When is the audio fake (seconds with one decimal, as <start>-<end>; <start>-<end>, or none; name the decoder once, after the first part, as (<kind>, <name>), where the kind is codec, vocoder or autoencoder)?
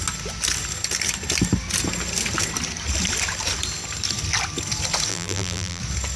5.1-5.8 (vocoder, BigVGAN v2)